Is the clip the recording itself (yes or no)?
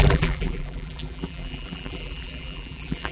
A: no